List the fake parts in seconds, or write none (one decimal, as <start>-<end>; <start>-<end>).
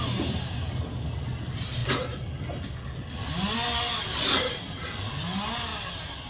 none